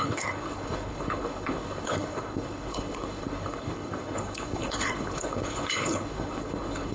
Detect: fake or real fake